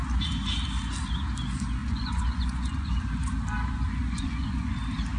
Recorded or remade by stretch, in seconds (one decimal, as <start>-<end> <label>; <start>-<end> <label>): 0.0-1.8 recorded; 1.8-3.0 remade; 3.0-4.0 recorded; 4.0-4.7 remade; 4.7-5.2 recorded

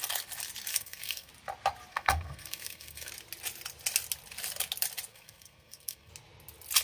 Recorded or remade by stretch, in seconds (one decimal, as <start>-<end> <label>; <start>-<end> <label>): 0.0-0.7 recorded; 0.7-1.3 remade; 1.3-1.9 recorded; 1.9-3.1 remade; 3.1-5.1 recorded; 5.1-6.1 remade; 6.1-6.8 recorded

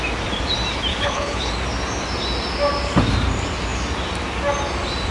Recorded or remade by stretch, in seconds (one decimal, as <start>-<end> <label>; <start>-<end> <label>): 0.0-0.9 recorded; 0.9-1.5 remade; 1.5-5.1 recorded

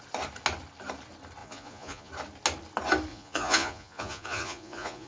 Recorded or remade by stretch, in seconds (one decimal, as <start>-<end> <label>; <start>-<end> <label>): 0.0-1.4 recorded; 1.4-2.1 remade; 2.1-3.1 recorded; 3.1-5.1 remade

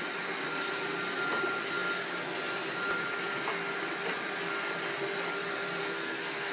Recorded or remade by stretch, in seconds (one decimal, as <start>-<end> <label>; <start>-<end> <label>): 0.0-5.8 recorded; 5.8-6.5 remade